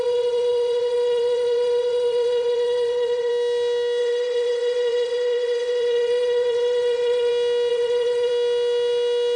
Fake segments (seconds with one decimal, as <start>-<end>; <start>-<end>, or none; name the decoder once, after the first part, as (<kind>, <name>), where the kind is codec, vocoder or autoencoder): 0.0-3.3 (vocoder, WaveNeXt); 4.0-7.3; 7.7-8.3